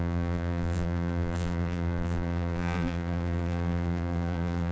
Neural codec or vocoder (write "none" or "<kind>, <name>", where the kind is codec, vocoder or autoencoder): vocoder, BigVGAN v2